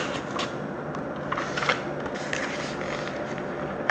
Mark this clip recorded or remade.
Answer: recorded